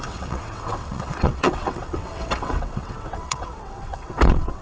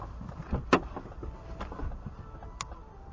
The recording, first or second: second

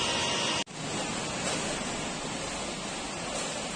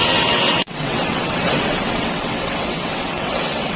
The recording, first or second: first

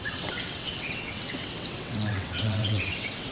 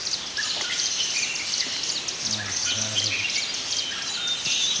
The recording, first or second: second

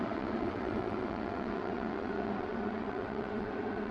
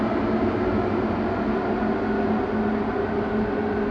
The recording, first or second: second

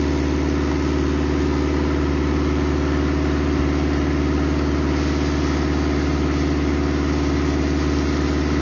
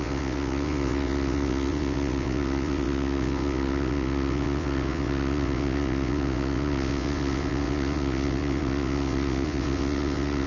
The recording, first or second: first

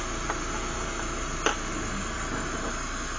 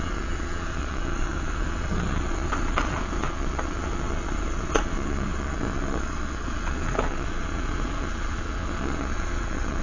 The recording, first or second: first